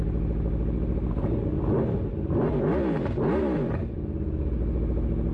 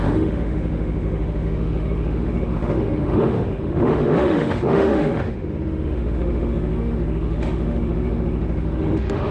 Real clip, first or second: first